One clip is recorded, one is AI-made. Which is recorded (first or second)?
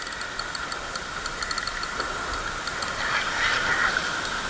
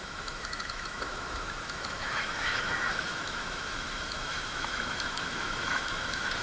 first